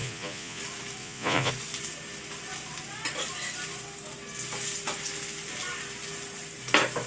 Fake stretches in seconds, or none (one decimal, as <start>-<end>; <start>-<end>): 0.0-0.6; 1.0-1.5